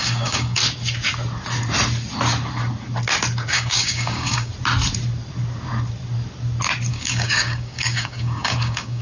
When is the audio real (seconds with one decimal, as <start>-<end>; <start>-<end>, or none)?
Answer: 0.6-3.5; 4.5-6.9